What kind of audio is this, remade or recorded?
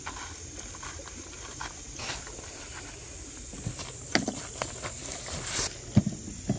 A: recorded